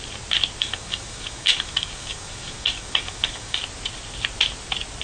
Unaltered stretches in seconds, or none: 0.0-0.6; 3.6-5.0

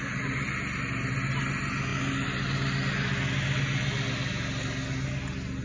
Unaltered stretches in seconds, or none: 0.0-5.6

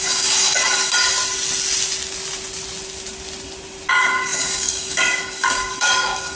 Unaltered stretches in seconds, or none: 0.9-3.9

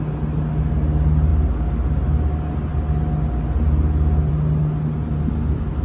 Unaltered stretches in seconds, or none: 0.0-5.8

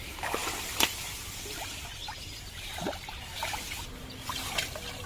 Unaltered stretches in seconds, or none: 0.0-5.1